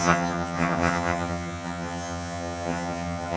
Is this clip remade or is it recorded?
remade